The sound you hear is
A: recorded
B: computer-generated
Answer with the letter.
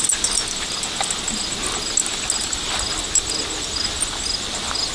A